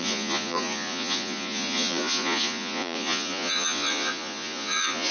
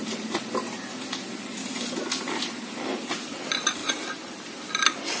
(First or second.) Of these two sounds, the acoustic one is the second